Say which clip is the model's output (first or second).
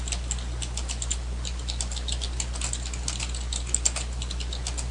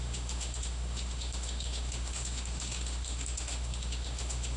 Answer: second